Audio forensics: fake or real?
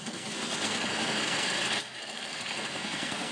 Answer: fake